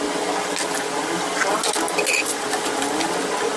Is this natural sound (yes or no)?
yes